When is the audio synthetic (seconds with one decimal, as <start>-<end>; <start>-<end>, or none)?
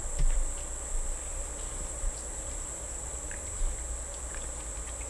1.3-3.1